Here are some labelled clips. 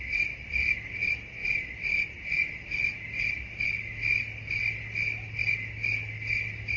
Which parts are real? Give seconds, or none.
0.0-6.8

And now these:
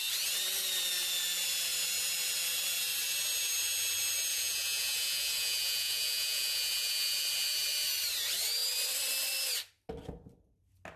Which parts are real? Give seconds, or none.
0.0-4.3; 7.2-11.0

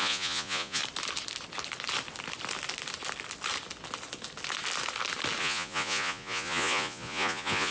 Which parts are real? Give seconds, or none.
0.8-5.4

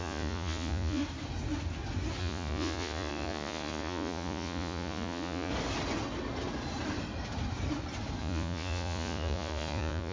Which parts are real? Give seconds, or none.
1.0-2.2; 5.5-8.2

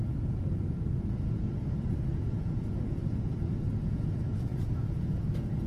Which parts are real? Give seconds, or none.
3.0-3.8

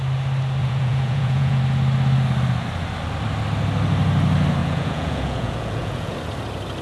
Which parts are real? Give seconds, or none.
0.0-0.6; 1.6-4.6; 6.1-6.8

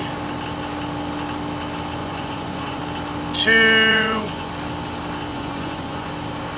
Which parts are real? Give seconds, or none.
0.0-2.0; 2.8-3.9; 4.5-5.3; 6.1-6.6